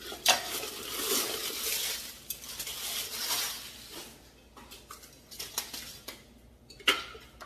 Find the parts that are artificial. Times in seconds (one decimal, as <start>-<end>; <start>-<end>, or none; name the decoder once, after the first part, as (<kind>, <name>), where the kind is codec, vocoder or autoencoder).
none